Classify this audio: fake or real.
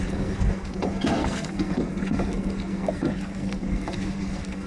fake